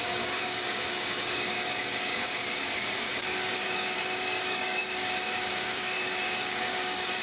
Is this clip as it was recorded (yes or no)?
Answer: no